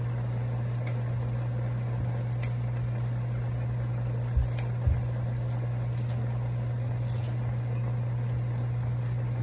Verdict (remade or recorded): recorded